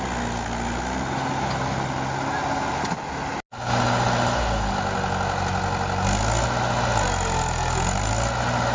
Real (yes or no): yes